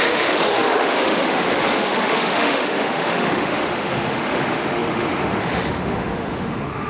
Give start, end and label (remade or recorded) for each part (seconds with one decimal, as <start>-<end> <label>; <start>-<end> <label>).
0.0-6.9 remade